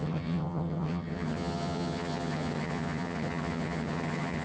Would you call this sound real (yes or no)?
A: no